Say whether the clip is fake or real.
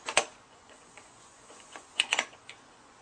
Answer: fake